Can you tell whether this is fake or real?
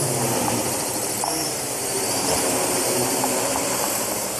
fake